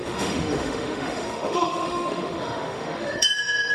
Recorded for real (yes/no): no